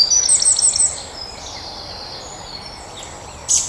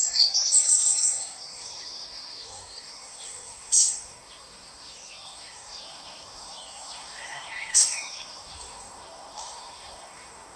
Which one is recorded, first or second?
first